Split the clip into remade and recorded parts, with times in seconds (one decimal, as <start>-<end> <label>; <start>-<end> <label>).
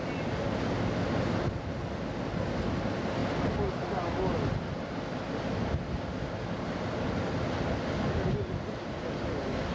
0.0-9.7 recorded